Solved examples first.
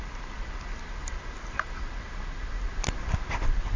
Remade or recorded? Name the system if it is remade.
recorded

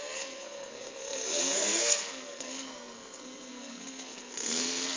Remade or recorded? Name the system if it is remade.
remade, codec, SNAC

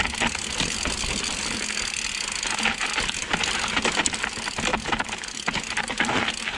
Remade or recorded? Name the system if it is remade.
recorded